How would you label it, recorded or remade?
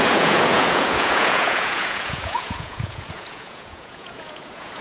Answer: remade